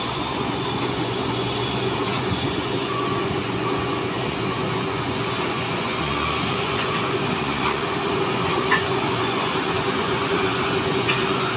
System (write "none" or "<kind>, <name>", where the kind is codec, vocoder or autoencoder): vocoder, Vocos